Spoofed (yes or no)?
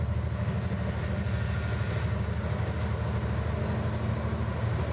no